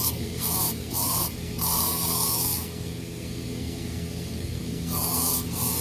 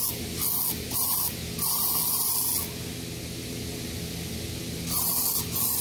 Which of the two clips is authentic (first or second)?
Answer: second